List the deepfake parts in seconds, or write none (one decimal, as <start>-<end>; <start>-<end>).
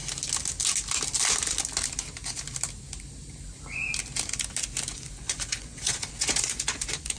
4.9-7.2